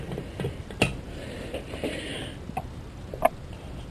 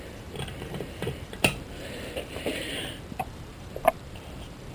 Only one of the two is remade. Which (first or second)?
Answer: second